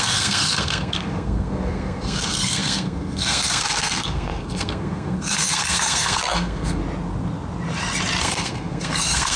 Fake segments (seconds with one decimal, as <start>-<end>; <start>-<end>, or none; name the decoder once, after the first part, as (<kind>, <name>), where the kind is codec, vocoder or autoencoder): 0.0-6.8 (codec, SNAC); 8.2-9.4